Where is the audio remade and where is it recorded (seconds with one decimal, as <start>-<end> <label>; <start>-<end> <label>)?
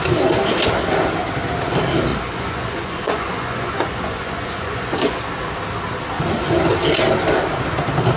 0.0-2.1 recorded; 2.1-5.2 remade; 5.2-8.2 recorded